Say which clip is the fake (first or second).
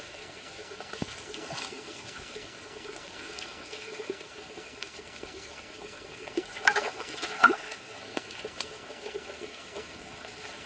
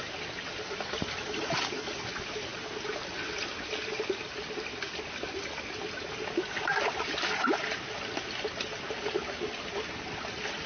first